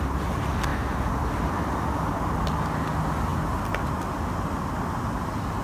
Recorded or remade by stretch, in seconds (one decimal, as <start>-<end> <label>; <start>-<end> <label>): 0.0-5.6 recorded